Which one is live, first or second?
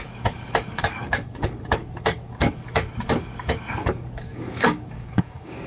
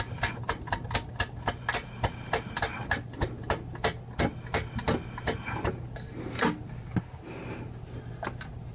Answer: second